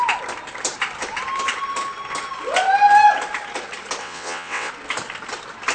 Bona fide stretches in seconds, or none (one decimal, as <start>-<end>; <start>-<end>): 0.0-4.0; 4.7-5.7